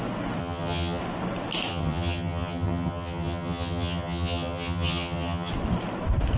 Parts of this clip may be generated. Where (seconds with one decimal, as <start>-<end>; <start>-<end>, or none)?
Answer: 0.4-1.0; 1.7-5.5